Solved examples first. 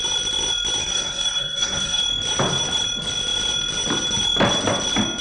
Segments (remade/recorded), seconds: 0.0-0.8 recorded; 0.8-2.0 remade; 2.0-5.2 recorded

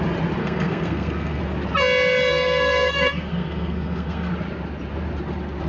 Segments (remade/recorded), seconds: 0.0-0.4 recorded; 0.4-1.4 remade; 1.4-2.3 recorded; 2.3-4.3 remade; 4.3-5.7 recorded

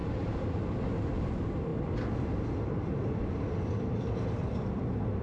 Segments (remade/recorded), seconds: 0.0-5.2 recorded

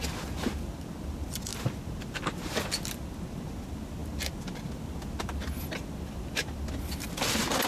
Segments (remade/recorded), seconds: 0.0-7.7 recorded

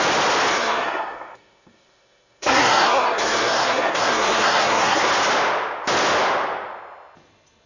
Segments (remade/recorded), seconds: 0.0-0.5 recorded; 0.5-5.1 remade; 5.1-7.7 recorded